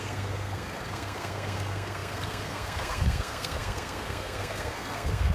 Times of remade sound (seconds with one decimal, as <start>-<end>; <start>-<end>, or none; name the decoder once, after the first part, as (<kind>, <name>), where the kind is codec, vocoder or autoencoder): 0.0-5.3 (codec, SNAC)